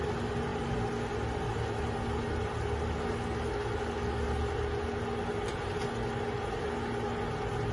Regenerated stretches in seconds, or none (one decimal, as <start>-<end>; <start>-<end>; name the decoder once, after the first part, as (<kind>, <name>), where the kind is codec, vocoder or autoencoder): none

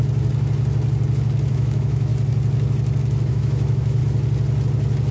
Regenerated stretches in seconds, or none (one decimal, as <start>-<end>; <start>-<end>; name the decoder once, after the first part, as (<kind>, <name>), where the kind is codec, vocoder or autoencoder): 1.5-2.1 (autoencoder, DAC-VAE); 3.3-4.0

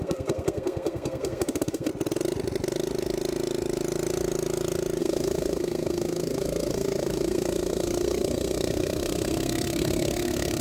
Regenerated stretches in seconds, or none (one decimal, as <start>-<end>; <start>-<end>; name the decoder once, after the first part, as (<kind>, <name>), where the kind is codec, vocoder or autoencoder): 0.0-1.9 (codec, SNAC); 5.0-10.6

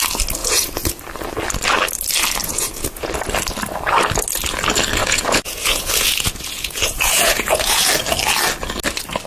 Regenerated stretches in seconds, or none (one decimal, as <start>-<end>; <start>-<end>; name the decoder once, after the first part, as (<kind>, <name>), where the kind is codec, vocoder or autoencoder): 0.4-1.0 (vocoder, Vocos); 2.4-3.1; 5.0-7.9

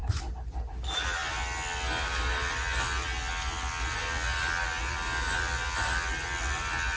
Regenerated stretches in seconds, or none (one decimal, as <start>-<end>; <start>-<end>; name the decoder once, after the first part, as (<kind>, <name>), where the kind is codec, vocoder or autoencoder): none